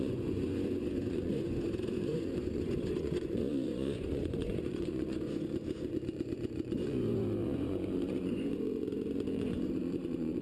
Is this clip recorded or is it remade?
remade